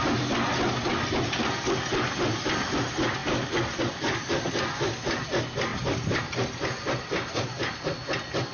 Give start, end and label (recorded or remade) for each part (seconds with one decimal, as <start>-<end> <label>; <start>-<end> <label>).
0.0-8.5 recorded